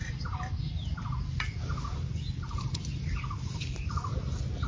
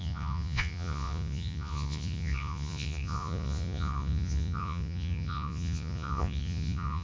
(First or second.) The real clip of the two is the first